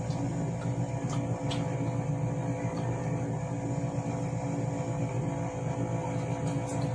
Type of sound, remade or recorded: recorded